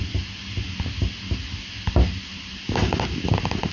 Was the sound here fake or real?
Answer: real